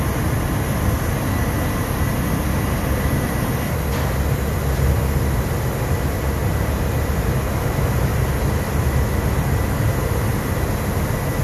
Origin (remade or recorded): recorded